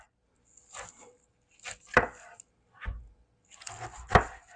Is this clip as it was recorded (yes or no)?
yes